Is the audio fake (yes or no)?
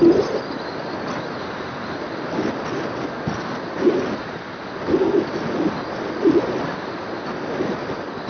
no